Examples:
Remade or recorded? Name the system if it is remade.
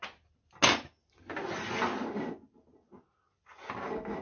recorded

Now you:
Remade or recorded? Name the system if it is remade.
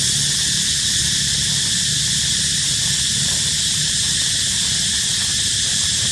recorded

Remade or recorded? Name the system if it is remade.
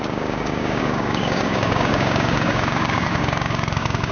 remade, codec, DAC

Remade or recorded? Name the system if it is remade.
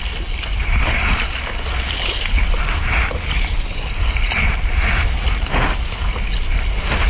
recorded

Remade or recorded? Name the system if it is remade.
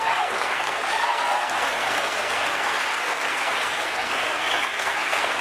remade, codec, SNAC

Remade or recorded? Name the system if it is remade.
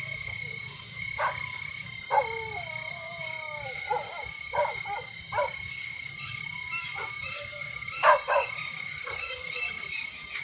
remade, codec, DAC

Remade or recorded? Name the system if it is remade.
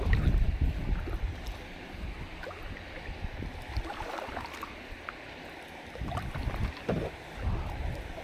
recorded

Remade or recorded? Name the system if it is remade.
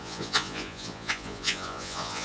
remade, vocoder, Vocos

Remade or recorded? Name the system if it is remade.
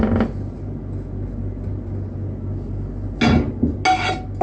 recorded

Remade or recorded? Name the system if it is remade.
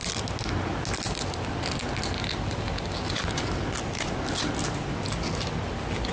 recorded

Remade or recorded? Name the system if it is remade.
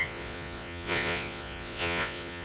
remade, vocoder, Vocos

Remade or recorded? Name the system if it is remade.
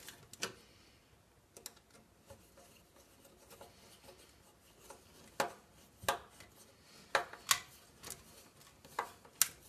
recorded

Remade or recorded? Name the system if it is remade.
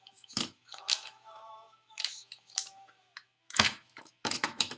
remade, autoencoder, DAC-VAE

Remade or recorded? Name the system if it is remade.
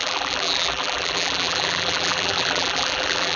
remade, vocoder, BigVGAN v2